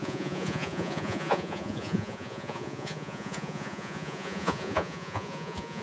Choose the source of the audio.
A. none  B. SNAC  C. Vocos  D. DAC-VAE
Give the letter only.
C